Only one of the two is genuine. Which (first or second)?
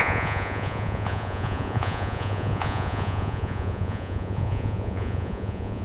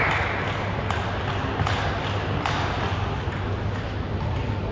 second